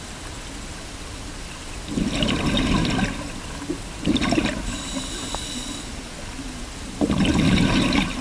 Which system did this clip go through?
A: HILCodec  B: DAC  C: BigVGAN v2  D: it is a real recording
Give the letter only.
D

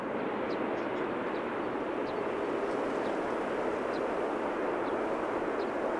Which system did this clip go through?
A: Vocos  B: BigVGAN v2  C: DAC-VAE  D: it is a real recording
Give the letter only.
D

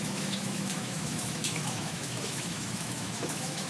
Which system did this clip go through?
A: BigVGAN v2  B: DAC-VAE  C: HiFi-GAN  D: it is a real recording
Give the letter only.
B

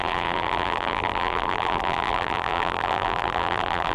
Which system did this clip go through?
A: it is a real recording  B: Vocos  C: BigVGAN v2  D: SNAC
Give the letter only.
C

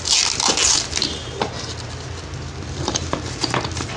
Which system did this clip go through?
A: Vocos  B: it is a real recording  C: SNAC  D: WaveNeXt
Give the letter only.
B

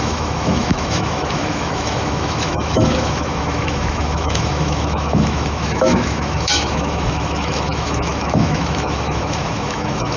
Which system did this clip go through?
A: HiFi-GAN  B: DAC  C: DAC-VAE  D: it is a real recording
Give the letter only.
C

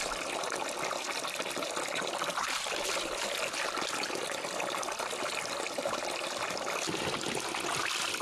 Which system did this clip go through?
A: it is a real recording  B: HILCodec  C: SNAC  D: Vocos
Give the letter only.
A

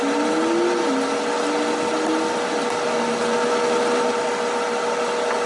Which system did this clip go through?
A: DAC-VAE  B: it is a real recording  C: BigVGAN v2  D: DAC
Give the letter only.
B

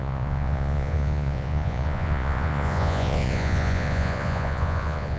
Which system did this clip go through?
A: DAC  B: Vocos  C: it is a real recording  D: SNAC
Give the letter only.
B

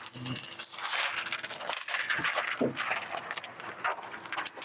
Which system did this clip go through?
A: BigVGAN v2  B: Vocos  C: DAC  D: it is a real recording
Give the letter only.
D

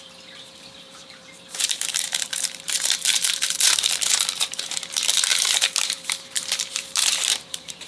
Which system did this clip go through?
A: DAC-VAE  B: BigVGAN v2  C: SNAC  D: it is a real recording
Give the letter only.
B